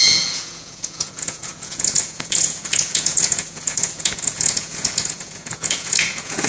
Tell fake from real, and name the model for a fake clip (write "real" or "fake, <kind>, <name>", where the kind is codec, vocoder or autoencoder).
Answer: fake, vocoder, Vocos